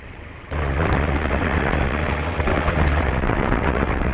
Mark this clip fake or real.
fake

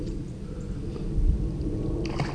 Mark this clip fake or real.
real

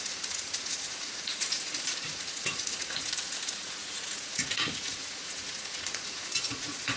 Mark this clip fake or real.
fake